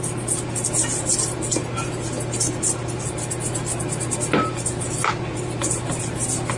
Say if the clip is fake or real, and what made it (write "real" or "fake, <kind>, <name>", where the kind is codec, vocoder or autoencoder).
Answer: real